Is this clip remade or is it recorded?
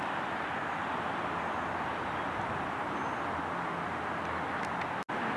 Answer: recorded